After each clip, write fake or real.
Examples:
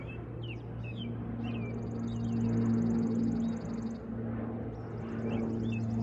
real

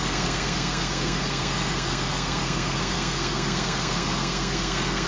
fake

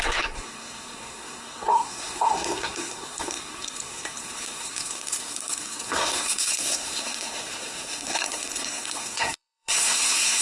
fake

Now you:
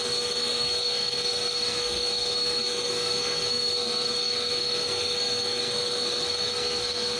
fake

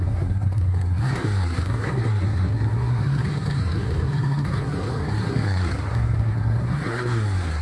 fake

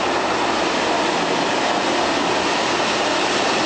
real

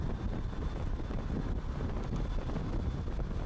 real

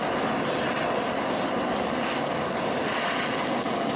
real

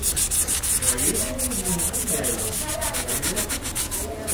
real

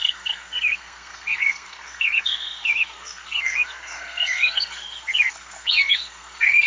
fake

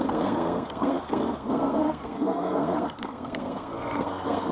fake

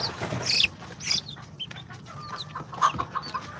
real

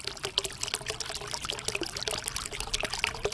real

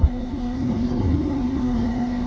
fake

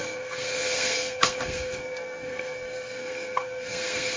fake